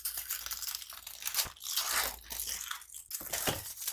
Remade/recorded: recorded